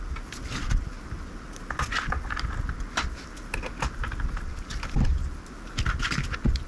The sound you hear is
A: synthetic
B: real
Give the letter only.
B